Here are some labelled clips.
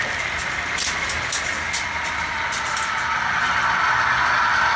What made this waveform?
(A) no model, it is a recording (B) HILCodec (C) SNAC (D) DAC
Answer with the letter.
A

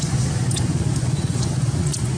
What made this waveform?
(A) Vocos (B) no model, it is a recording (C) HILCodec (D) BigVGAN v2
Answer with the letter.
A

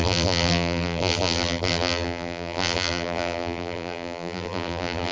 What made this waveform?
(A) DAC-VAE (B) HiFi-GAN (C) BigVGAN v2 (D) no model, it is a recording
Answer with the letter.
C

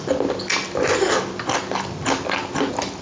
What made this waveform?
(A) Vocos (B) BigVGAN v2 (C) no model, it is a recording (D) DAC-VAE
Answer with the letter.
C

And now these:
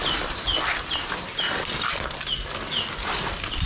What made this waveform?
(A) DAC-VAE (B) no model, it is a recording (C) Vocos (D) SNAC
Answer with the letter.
B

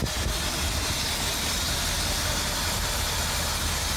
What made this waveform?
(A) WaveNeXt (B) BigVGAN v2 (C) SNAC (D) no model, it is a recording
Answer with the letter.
D